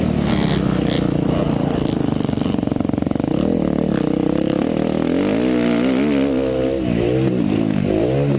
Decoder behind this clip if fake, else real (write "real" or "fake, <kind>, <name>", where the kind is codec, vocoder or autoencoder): real